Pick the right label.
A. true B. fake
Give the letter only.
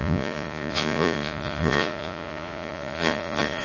B